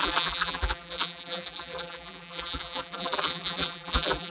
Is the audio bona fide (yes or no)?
no